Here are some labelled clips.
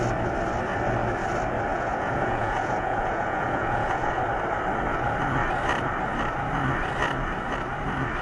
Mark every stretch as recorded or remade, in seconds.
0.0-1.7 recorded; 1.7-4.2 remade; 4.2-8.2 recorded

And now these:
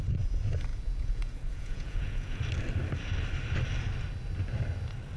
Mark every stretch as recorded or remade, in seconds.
0.0-0.7 recorded; 0.7-2.4 remade; 2.4-5.2 recorded

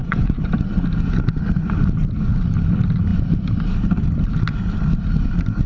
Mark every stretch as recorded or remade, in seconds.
0.0-0.5 remade; 0.5-5.7 recorded

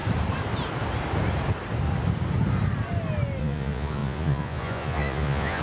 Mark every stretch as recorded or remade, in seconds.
0.0-3.4 recorded; 3.4-5.6 remade

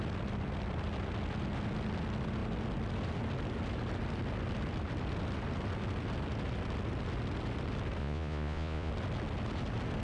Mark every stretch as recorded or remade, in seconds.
0.0-8.0 recorded; 8.0-8.9 remade; 8.9-10.0 recorded